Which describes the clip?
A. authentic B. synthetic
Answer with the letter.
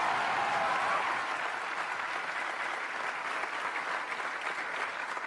A